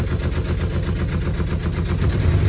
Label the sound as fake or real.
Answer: real